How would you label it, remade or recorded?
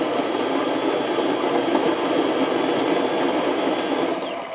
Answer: recorded